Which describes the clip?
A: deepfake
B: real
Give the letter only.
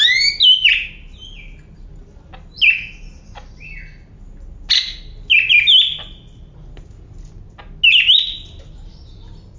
B